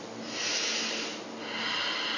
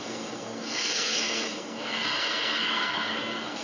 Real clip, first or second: first